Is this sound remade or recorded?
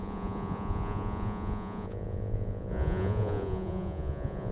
remade